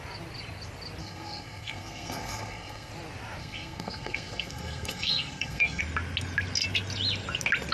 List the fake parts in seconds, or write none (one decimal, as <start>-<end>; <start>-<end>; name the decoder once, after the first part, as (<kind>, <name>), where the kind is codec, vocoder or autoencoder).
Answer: 1.0-2.9 (codec, SNAC); 3.4-5.8